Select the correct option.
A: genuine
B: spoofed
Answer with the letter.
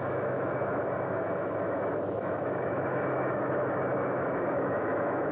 B